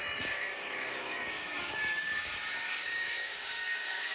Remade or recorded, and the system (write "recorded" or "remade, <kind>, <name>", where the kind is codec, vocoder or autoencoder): remade, codec, DAC